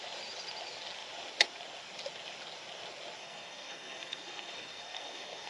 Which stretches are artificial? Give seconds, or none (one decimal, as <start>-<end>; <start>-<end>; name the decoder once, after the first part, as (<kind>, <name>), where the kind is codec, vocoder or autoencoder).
3.2-5.5 (codec, SNAC)